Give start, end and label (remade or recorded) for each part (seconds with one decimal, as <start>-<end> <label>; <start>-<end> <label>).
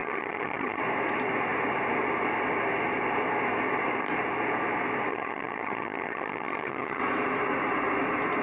0.0-0.8 remade; 0.8-5.1 recorded; 5.1-7.0 remade; 7.0-8.4 recorded